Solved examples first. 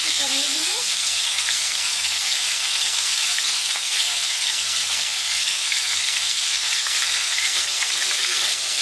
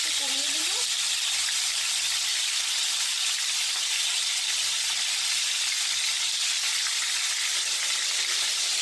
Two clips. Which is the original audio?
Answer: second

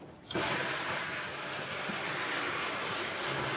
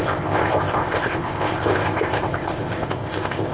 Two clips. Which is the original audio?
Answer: first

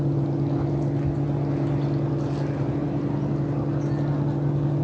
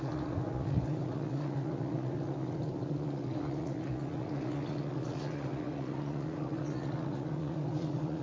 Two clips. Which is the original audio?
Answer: first